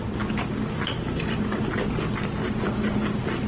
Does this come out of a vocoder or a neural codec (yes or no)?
no